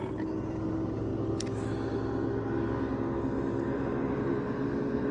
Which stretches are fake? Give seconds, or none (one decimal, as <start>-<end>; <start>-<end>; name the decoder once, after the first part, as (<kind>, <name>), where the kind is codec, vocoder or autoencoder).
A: none